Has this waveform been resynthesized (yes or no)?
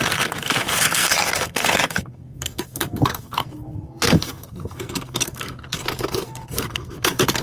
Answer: yes